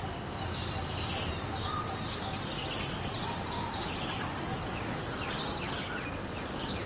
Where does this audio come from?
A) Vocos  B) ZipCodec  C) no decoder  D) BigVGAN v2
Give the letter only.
C